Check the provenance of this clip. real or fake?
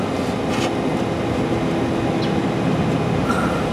real